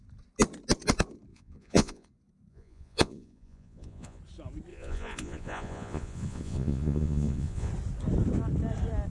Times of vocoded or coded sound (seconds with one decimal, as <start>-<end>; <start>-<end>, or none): 1.3-2.1; 2.5-4.2; 4.7-7.7